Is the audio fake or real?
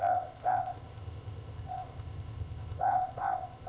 fake